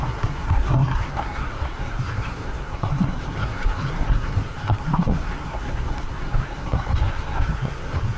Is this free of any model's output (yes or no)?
no